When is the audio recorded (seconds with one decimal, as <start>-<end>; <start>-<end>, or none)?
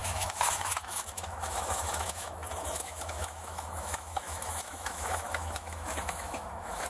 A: none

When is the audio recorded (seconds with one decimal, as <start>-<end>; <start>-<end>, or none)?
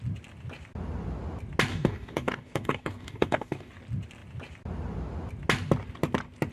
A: 0.0-1.7; 3.7-6.5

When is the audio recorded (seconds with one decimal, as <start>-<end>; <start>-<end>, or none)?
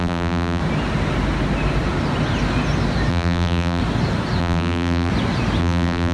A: 0.6-3.1; 3.8-4.4; 5.1-5.6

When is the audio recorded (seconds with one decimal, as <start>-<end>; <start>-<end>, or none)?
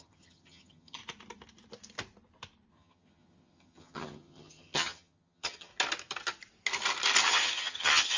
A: 1.0-2.7; 5.7-7.2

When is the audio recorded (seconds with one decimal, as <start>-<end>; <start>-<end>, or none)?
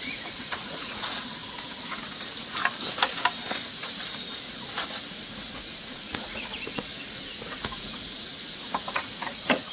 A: 2.6-3.5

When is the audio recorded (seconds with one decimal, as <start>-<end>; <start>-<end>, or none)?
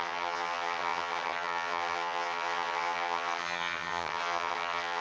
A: none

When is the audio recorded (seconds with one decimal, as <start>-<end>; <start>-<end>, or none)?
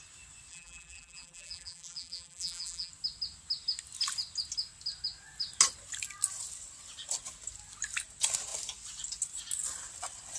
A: 0.0-0.5; 2.9-10.4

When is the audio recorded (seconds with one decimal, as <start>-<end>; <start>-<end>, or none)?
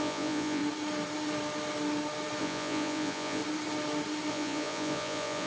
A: 0.6-2.4; 3.4-4.3